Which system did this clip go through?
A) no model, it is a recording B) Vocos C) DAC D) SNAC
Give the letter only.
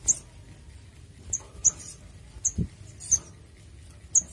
A